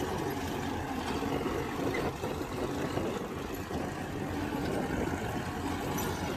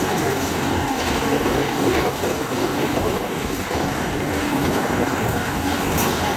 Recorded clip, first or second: first